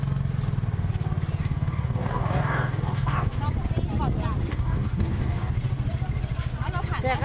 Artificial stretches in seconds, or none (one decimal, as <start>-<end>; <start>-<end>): 1.4-3.4; 4.5-5.5